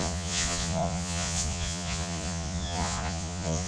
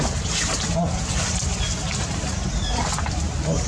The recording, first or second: second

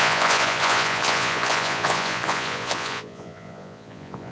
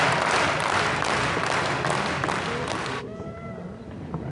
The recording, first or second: second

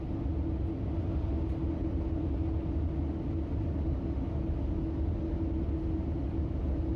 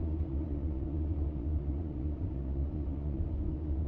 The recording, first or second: first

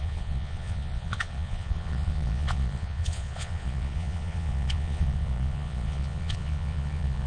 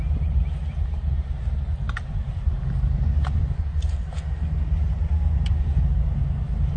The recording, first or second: second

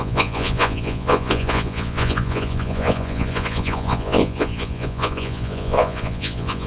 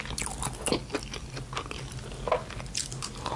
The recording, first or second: second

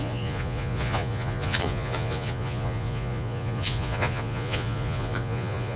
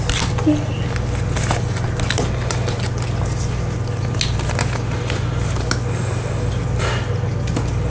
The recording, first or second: second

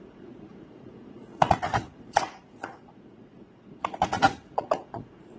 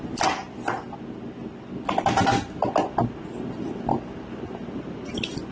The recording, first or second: second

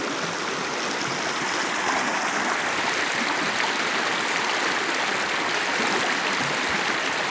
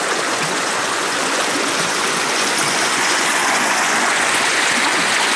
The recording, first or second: first